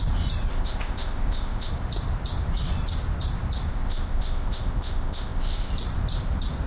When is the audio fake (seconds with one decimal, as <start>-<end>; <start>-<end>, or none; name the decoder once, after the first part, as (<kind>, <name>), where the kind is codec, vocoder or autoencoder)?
0.5-1.7 (codec, ZipCodec); 3.7-5.7